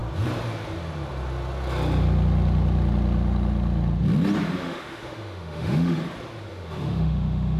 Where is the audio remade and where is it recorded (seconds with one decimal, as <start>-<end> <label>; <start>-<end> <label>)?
0.0-4.6 recorded; 4.6-6.0 remade; 6.0-6.5 recorded; 6.5-7.6 remade